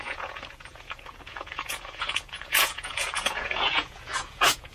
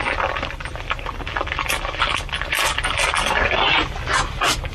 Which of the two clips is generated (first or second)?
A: first